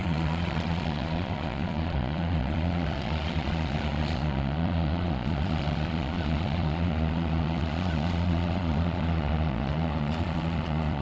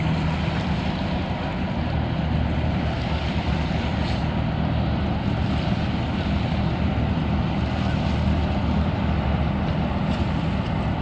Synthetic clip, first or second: first